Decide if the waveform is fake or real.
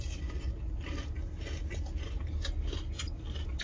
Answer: real